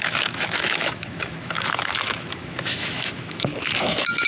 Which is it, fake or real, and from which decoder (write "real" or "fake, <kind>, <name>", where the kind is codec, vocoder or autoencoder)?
fake, autoencoder, DAC-VAE